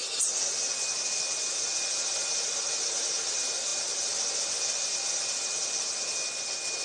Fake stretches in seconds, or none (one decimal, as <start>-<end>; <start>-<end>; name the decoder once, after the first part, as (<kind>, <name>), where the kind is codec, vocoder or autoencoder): none